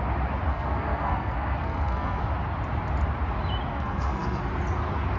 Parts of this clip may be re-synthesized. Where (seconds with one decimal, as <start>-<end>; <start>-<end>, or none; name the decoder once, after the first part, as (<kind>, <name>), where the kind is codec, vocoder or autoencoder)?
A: 0.5-2.2 (codec, SNAC); 3.7-4.4